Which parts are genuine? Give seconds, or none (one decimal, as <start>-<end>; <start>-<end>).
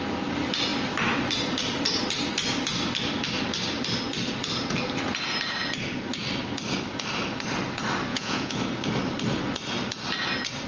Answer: 0.0-8.1; 8.6-10.7